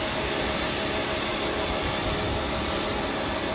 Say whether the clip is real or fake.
fake